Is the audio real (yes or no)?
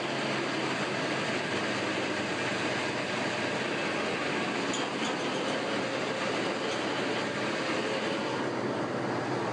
yes